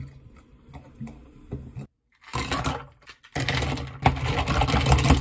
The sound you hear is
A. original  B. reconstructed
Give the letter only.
A